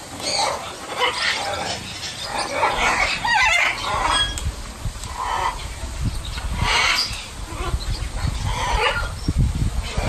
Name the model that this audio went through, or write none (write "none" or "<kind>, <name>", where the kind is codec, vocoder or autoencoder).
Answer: none